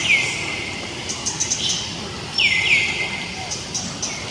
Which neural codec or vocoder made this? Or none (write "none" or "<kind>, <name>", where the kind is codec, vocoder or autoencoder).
none